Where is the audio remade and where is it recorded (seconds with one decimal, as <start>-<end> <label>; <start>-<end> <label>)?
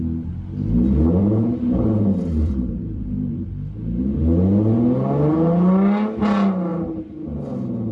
0.0-1.2 recorded; 1.2-4.2 remade; 4.2-7.9 recorded